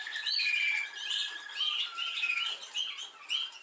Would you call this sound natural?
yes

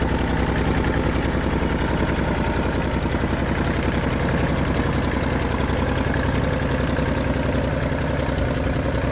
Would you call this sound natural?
yes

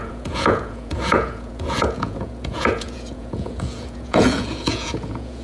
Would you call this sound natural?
no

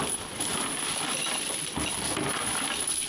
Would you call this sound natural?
yes